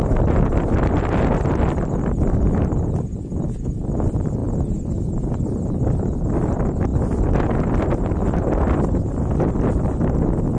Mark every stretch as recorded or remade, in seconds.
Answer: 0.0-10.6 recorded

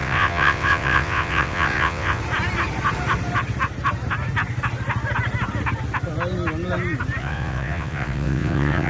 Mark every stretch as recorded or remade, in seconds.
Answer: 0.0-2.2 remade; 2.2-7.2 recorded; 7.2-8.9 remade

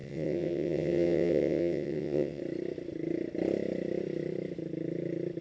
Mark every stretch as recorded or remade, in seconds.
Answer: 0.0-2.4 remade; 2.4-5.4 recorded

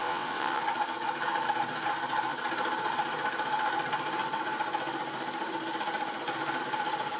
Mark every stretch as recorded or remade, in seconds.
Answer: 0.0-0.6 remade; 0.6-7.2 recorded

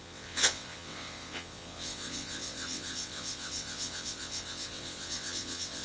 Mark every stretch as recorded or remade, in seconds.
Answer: 0.0-5.8 remade

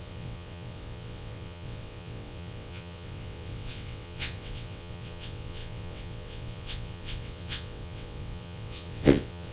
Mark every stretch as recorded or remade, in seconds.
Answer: 0.0-9.5 remade